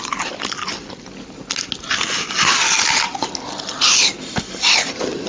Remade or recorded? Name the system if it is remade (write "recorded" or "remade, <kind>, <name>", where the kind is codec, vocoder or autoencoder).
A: recorded